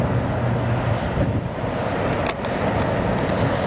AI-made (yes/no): no